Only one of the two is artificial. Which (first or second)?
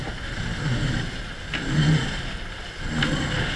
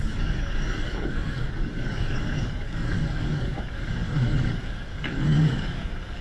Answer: second